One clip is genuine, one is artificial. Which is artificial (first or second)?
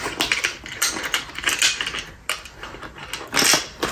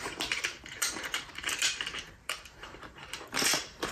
second